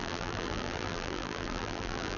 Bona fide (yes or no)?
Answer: no